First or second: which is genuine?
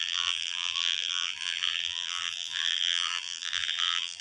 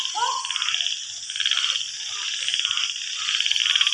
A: second